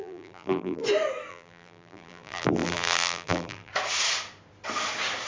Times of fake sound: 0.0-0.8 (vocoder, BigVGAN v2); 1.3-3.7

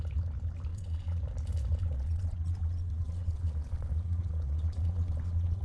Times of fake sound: 0.7-1.2 (vocoder, Vocos); 1.8-5.6

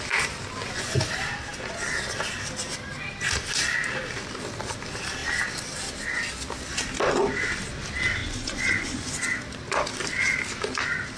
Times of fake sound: 0.6-1.1 (vocoder, Vocos); 8.2-9.4

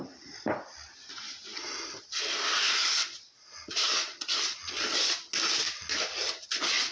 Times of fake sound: none

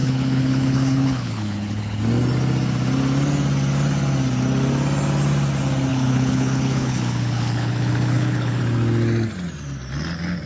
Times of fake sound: 0.0-2.0 (codec, HILCodec); 5.9-8.6

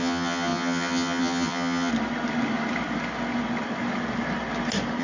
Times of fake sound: 0.0-1.9 (vocoder, HiFi-GAN)

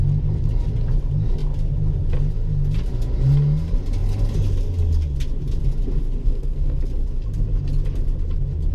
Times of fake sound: 6.2-6.8 (codec, SNAC)